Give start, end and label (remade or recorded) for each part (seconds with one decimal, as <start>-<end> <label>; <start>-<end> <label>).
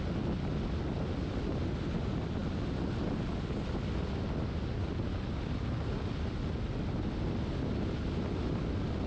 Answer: 0.0-9.1 recorded